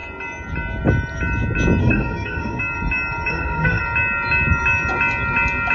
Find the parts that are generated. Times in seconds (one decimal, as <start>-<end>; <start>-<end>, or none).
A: 1.8-2.6; 3.3-3.8